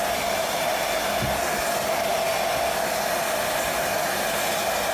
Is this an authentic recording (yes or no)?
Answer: yes